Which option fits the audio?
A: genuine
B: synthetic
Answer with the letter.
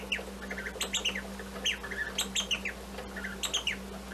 A